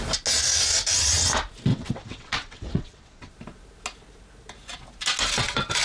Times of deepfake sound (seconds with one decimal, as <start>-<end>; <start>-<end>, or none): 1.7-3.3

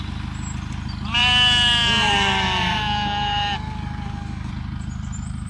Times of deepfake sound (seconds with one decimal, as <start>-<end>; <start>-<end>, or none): 1.2-4.5

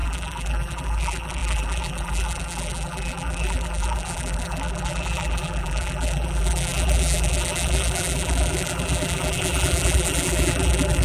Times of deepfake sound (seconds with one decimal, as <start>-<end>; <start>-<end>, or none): 0.0-11.0

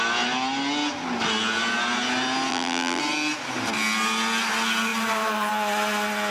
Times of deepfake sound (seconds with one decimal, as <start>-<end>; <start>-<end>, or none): 2.5-3.0

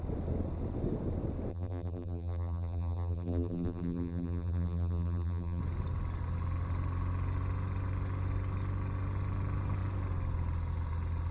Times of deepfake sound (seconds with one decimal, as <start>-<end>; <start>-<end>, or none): 1.5-5.6